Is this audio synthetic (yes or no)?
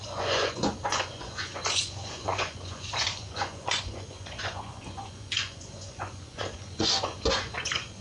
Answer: yes